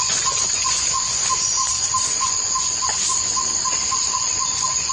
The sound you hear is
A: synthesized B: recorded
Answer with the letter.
A